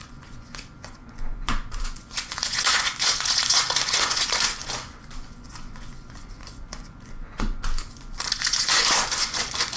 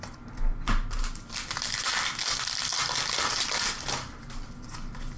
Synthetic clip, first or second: first